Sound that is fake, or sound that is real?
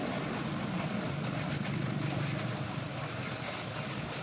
real